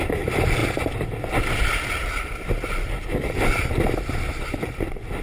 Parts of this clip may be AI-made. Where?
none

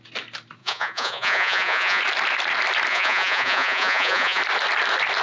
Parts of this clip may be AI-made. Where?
0.6-2.0 (vocoder, Vocos); 2.9-4.4